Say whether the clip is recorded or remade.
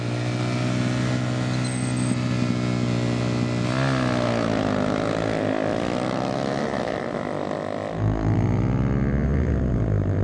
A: recorded